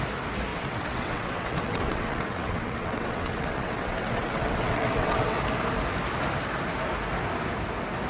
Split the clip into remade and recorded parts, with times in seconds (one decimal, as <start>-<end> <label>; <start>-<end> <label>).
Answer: 0.0-0.5 recorded; 0.5-5.4 remade; 5.4-8.1 recorded